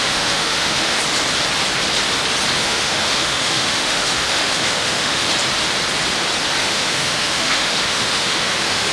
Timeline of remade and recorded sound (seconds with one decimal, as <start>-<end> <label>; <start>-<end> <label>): 0.0-1.0 remade; 1.0-2.6 recorded; 2.6-5.3 remade; 5.3-6.6 recorded; 6.6-8.9 remade